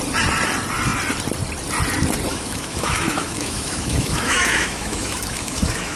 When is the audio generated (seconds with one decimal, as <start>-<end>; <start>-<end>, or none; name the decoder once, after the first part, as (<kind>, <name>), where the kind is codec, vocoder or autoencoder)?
2.3-6.0 (autoencoder, DAC-VAE)